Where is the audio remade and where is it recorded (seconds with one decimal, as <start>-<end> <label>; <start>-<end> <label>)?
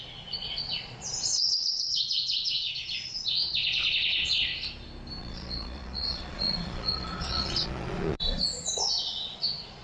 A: 0.0-4.5 remade; 4.5-5.2 recorded; 5.2-9.8 remade